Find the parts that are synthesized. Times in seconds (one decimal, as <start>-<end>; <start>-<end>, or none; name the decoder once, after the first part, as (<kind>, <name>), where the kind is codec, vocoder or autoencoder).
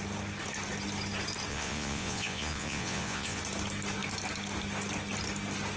1.5-3.4 (vocoder, Vocos)